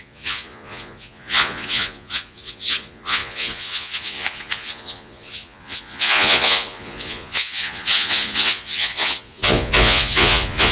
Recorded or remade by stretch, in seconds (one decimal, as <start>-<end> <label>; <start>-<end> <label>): 0.0-10.7 remade